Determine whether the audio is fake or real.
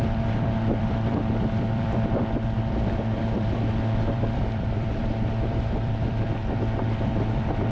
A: fake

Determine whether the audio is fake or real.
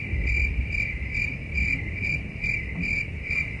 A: real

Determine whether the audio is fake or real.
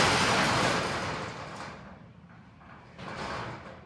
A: fake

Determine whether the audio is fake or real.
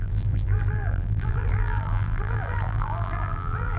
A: fake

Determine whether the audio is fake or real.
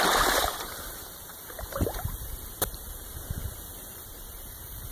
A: fake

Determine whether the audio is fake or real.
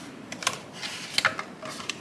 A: real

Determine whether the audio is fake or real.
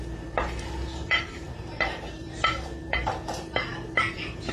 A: fake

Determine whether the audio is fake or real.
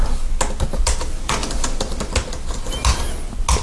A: real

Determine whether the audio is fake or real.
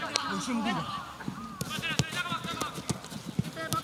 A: real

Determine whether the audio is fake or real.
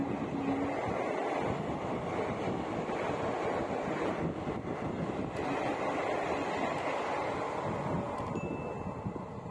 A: real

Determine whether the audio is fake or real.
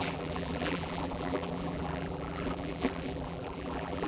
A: fake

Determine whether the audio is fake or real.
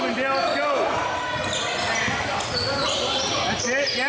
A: real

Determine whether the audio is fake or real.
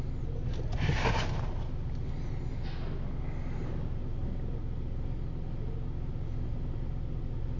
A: real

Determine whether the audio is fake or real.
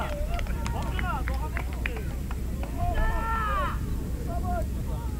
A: fake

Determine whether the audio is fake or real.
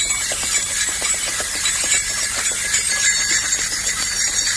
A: fake